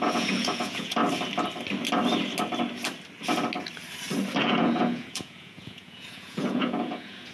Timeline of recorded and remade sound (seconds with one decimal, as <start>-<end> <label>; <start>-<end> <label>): 0.0-1.0 remade; 1.0-4.4 recorded; 4.4-7.3 remade